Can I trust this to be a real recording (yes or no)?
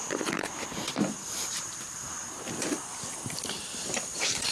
no